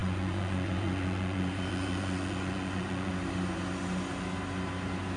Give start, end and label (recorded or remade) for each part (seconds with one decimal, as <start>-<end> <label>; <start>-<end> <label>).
0.0-3.1 remade; 3.1-5.2 recorded